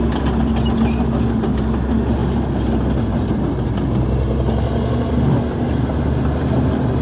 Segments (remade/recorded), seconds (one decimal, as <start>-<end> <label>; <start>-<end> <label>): 0.0-7.0 recorded